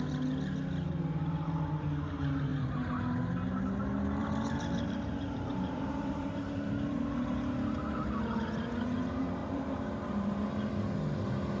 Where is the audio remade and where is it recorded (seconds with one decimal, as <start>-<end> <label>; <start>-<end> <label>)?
0.0-4.2 recorded; 4.2-7.0 remade; 7.0-9.4 recorded; 9.4-10.4 remade; 10.4-11.6 recorded